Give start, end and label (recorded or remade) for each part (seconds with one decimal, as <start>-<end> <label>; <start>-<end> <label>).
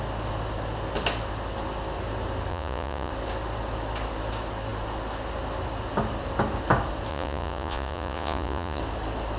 0.0-2.5 recorded; 2.5-3.1 remade; 3.1-7.1 recorded; 7.1-8.8 remade; 8.8-9.4 recorded